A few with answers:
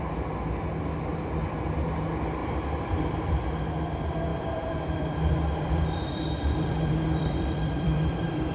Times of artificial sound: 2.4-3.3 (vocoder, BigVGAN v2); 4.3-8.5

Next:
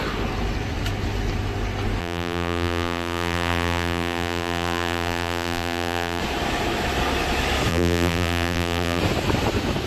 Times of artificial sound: 2.0-6.2 (vocoder, BigVGAN v2); 7.7-9.0

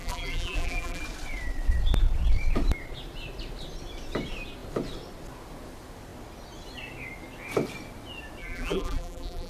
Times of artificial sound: 0.0-1.0 (vocoder, BigVGAN v2); 8.4-9.5

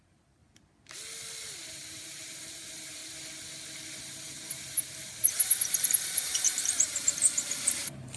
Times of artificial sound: 0.0-0.4 (vocoder, BigVGAN v2); 1.7-3.0; 4.0-8.2

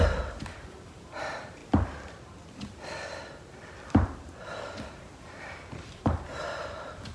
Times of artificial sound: 0.0-1.6 (vocoder, BigVGAN v2); 4.9-7.1

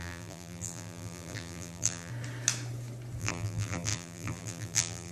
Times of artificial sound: 0.0-2.1 (vocoder, BigVGAN v2); 3.2-5.1